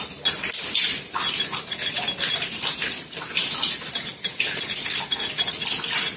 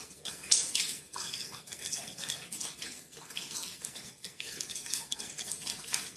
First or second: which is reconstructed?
second